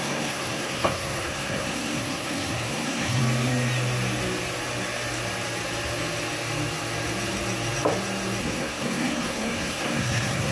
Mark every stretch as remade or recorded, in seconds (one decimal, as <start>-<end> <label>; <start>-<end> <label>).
0.0-3.2 remade; 3.2-8.4 recorded; 8.4-10.5 remade